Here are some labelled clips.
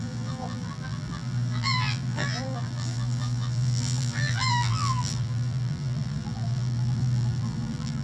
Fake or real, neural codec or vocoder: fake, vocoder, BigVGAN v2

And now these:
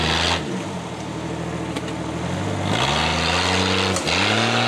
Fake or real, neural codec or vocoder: real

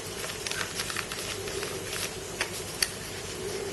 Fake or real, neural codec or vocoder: fake, vocoder, BigVGAN v2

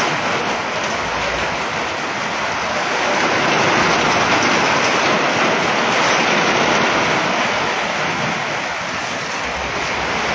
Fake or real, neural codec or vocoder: real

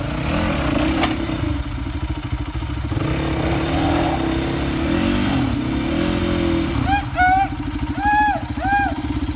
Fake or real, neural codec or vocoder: real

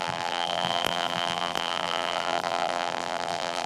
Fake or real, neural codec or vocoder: fake, vocoder, BigVGAN v2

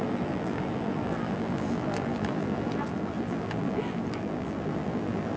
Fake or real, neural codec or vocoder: fake, vocoder, BigVGAN v2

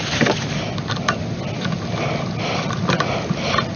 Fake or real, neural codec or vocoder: real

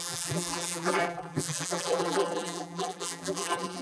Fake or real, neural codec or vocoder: fake, vocoder, BigVGAN v2